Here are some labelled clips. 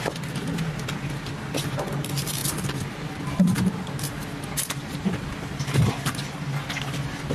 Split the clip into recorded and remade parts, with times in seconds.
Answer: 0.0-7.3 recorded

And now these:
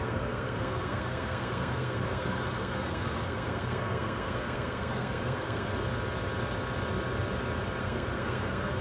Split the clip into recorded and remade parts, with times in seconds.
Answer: 0.0-5.7 remade; 5.7-7.8 recorded; 7.8-8.8 remade

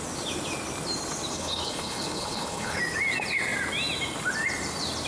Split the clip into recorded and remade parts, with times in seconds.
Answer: 0.0-1.3 recorded; 1.3-2.8 remade; 2.8-5.1 recorded